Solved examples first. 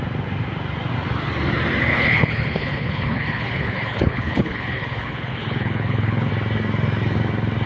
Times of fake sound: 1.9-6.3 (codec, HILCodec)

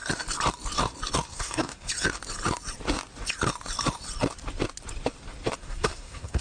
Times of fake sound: 1.3-1.9 (codec, SNAC); 5.6-6.4

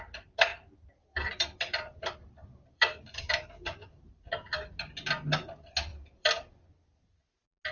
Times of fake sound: 0.5-4.1 (vocoder, BigVGAN v2); 5.9-6.5

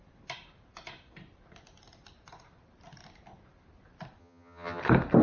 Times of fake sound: 4.2-4.8 (vocoder, HiFi-GAN)

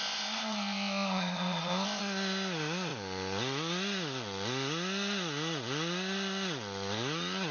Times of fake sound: 0.0-2.0 (codec, ZipCodec)